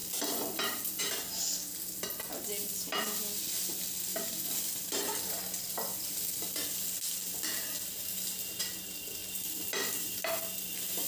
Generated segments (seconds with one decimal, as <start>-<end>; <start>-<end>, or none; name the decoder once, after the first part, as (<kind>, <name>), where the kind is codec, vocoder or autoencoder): 0.0-1.0 (vocoder, BigVGAN v2); 4.1-6.3; 7.2-8.6; 9.2-10.3